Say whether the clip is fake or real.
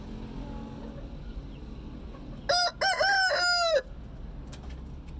real